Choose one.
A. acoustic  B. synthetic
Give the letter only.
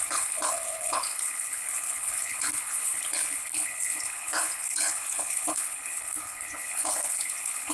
B